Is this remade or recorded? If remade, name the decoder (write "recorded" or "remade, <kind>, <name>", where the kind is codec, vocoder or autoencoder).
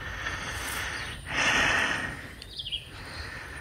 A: recorded